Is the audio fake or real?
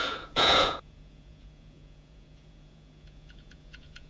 fake